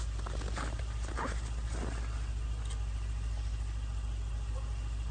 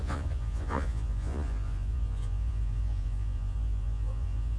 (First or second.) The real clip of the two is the first